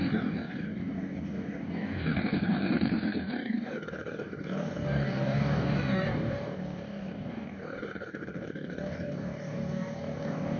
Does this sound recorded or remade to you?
remade